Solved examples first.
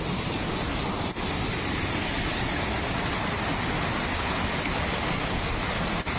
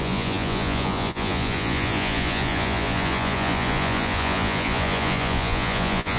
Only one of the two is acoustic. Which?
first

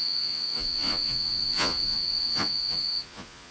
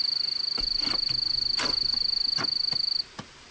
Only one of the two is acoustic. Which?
second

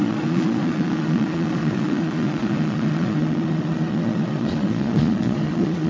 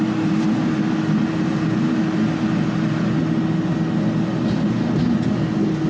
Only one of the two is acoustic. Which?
second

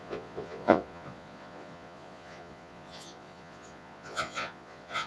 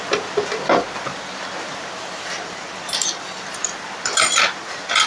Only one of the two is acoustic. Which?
second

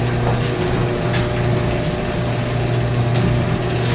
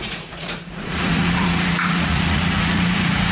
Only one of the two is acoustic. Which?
first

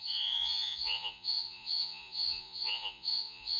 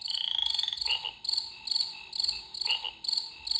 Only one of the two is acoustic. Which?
second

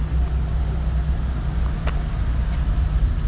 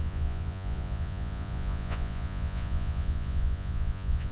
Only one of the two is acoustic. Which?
first